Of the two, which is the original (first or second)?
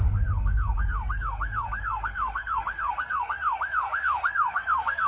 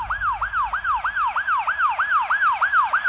second